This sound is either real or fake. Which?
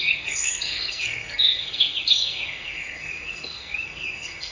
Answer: fake